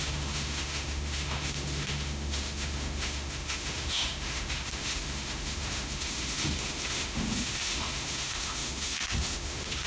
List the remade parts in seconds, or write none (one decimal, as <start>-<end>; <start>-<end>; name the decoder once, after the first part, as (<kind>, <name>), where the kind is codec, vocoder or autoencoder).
0.0-9.9 (autoencoder, DAC-VAE)